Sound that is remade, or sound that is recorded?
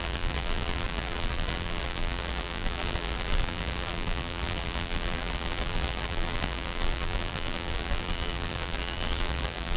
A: remade